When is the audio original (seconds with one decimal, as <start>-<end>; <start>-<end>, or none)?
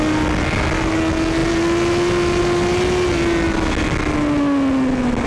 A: 0.0-5.3